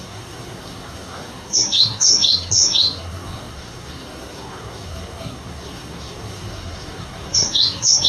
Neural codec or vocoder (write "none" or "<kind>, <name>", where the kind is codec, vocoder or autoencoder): codec, SNAC